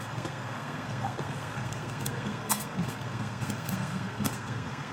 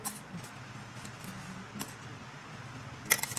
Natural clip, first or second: second